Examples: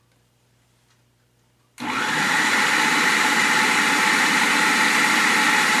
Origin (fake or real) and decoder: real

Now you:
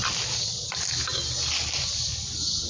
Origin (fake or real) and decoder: real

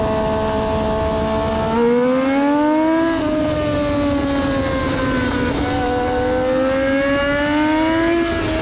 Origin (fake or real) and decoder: real